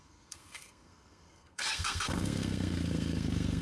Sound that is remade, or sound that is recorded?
remade